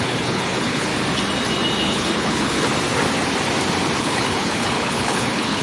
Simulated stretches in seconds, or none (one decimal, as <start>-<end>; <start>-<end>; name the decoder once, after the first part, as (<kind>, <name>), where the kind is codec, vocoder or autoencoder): 0.0-0.9 (codec, HILCodec); 1.8-2.7; 4.0-5.6